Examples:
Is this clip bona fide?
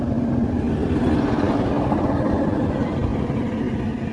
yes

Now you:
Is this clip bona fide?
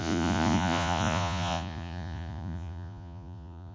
no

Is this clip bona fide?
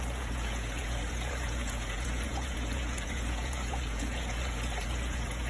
no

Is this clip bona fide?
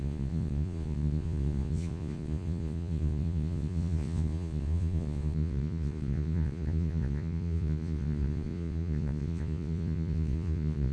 no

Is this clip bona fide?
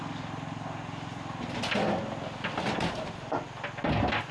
yes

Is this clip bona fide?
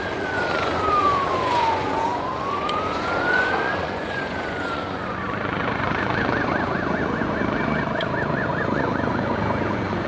no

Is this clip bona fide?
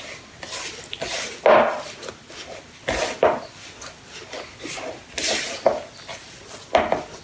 yes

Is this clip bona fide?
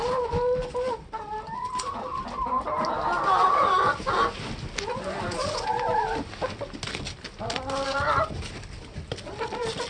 yes